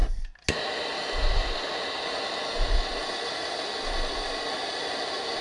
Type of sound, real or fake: real